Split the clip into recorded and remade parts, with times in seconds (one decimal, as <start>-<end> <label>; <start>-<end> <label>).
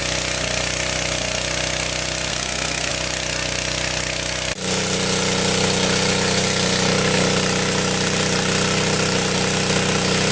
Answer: 0.0-2.3 recorded; 2.3-2.9 remade; 2.9-10.3 recorded